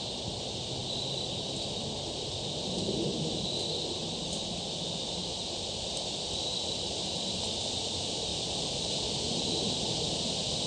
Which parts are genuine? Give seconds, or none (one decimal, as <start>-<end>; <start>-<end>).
0.0-8.3; 9.0-10.7